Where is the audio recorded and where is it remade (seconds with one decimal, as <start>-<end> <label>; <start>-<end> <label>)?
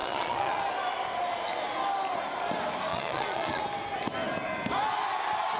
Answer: 0.0-0.6 remade; 0.6-2.9 recorded; 2.9-3.6 remade; 3.6-5.6 recorded